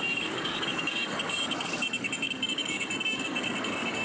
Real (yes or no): no